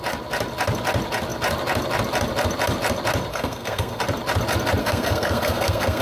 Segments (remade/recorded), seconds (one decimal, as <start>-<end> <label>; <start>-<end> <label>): 0.0-3.3 recorded; 3.3-4.0 remade; 4.0-4.8 recorded; 4.8-6.0 remade